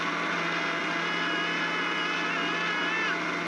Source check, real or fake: real